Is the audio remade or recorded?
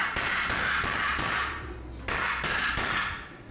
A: recorded